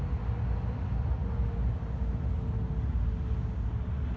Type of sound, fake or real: real